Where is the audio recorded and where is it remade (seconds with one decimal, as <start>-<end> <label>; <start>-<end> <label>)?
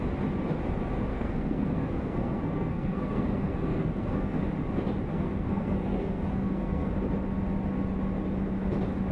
0.0-1.1 recorded; 1.1-4.4 remade; 4.4-5.1 recorded; 5.1-6.9 remade; 6.9-9.1 recorded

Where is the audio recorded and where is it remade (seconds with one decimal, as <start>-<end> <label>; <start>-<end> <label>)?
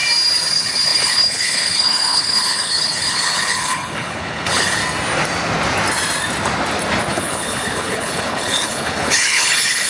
0.0-0.5 recorded; 0.5-4.8 remade; 4.8-7.1 recorded; 7.1-9.9 remade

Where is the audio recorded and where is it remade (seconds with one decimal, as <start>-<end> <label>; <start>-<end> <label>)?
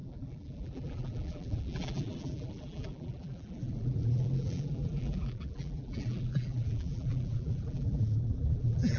0.0-9.0 remade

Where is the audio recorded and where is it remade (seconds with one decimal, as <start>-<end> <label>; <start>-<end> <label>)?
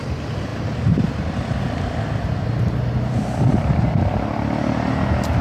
0.0-5.4 recorded